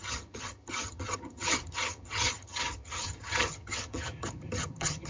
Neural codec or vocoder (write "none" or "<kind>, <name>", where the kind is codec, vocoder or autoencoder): vocoder, HiFi-GAN